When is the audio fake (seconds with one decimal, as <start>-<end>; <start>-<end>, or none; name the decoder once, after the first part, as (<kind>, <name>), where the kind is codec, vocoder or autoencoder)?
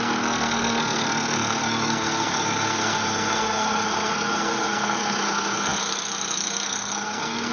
0.0-7.5 (codec, SNAC)